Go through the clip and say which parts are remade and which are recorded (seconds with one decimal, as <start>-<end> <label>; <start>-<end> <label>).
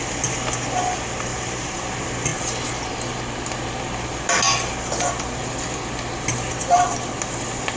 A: 0.0-1.3 recorded; 1.3-1.8 remade; 1.8-7.8 recorded